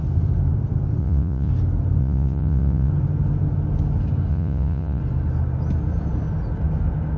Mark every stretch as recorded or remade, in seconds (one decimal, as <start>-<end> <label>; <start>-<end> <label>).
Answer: 0.0-1.0 recorded; 1.0-1.5 remade; 1.5-2.0 recorded; 2.0-2.9 remade; 2.9-4.3 recorded; 4.3-5.0 remade; 5.0-7.2 recorded